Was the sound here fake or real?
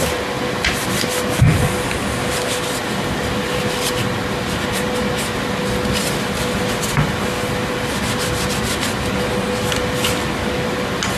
real